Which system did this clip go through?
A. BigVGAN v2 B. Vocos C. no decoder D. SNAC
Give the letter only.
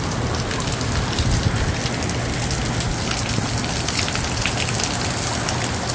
C